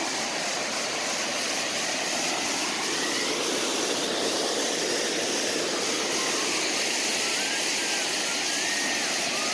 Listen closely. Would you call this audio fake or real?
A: real